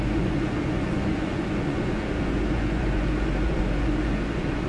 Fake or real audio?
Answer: fake